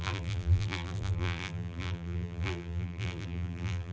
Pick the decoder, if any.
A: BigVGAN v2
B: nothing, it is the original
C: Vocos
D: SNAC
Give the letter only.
A